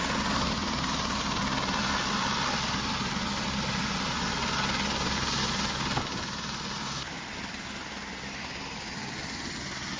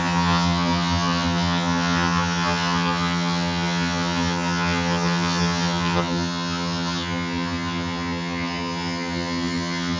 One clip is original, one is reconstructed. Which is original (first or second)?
first